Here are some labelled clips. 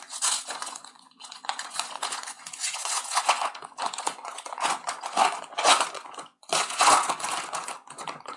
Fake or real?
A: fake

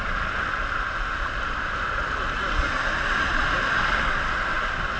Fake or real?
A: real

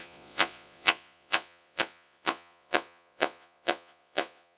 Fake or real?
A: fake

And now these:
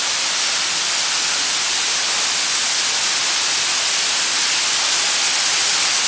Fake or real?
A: real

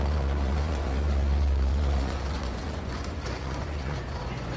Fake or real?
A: fake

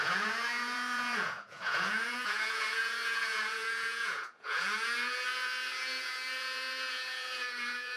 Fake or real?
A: fake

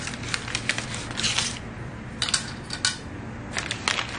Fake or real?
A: real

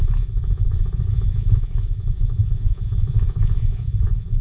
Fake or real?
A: fake